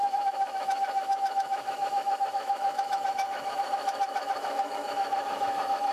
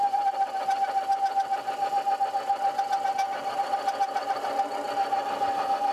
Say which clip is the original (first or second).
second